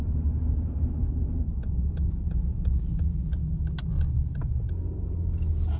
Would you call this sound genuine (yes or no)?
yes